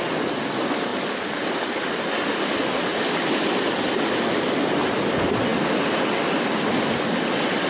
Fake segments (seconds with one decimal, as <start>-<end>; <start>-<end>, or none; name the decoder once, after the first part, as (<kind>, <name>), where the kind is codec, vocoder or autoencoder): none